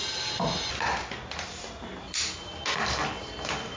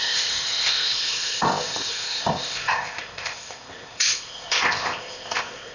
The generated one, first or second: second